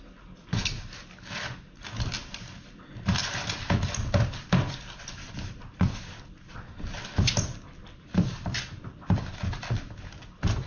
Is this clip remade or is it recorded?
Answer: recorded